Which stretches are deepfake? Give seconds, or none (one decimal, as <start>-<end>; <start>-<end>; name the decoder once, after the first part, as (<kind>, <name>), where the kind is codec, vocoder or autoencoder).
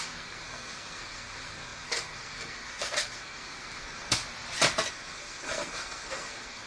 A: 0.0-4.2 (codec, SNAC); 4.9-6.7